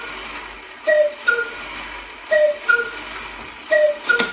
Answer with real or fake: real